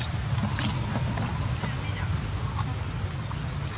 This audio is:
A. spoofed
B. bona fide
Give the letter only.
B